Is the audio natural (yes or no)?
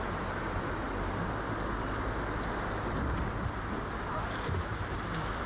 yes